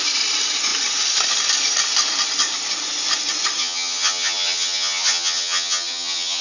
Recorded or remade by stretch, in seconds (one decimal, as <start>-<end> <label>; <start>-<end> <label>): 0.0-3.6 recorded; 3.6-6.4 remade